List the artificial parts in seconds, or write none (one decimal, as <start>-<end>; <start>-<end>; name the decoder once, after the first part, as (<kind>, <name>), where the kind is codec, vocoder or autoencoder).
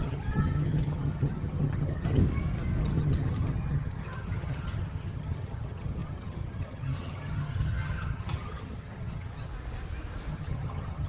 0.0-2.2 (vocoder, HiFi-GAN); 2.8-9.5; 10.3-11.1